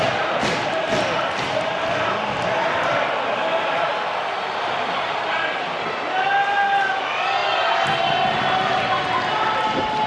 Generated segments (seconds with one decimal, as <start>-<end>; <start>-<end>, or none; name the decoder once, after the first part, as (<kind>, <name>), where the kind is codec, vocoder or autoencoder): none